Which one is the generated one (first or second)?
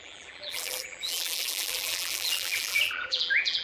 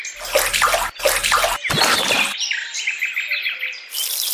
first